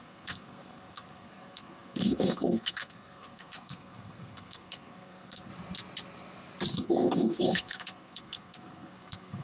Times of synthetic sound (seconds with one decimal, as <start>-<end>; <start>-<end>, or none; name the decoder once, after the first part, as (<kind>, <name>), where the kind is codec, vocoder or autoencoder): 0.0-5.5 (codec, SNAC); 6.7-9.4